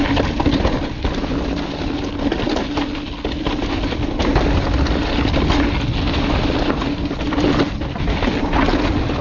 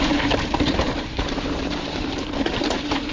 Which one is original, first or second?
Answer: first